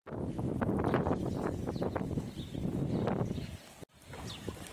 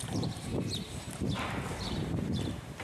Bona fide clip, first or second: first